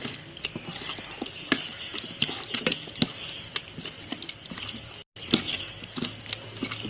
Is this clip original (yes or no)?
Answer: yes